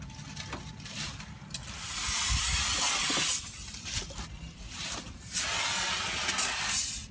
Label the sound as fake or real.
real